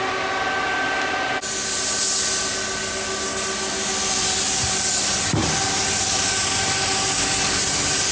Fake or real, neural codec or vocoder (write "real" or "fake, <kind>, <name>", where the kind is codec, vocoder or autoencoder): real